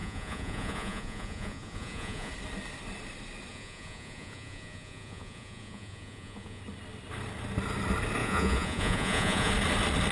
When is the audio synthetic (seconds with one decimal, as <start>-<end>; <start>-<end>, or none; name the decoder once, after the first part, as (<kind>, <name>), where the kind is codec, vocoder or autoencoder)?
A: 0.0-2.3 (vocoder, Vocos); 3.5-6.6; 8.2-9.5